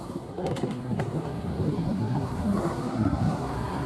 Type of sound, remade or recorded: remade